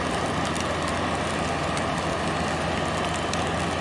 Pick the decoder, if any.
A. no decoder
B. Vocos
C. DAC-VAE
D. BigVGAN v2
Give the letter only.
A